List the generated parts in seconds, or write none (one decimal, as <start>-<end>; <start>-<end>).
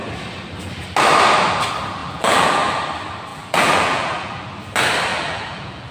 2.0-2.7; 3.3-4.5; 5.1-5.9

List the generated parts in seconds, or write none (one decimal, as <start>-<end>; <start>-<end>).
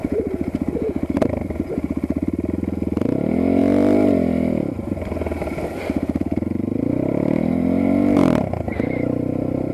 3.6-8.4